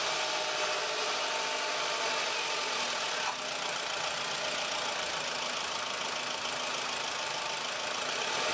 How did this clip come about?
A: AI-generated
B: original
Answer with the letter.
B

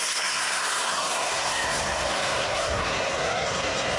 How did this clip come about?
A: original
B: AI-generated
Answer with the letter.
B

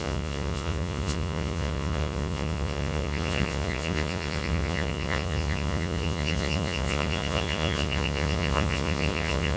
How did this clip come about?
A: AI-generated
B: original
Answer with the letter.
A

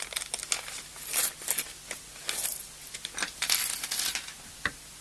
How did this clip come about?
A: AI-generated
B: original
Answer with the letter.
B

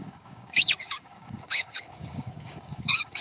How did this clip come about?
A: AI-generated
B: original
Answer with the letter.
A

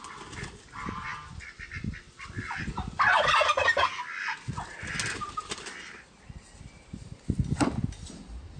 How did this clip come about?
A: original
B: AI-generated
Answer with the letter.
A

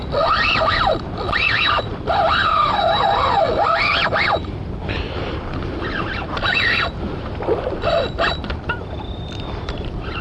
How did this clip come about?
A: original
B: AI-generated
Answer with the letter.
B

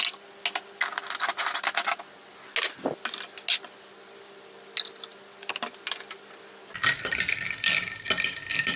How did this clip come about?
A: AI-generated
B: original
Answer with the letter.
B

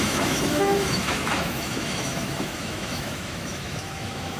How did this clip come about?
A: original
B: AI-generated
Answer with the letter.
B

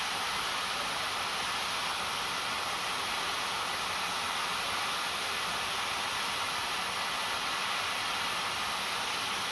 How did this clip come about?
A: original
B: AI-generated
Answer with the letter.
A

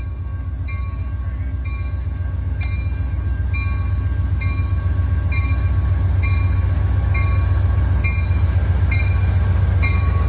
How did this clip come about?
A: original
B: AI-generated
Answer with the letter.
A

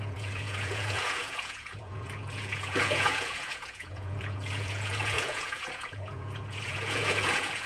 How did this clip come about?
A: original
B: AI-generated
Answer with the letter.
B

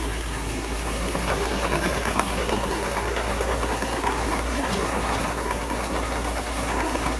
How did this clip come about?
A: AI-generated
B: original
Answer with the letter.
A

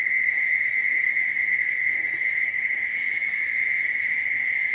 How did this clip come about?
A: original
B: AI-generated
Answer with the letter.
A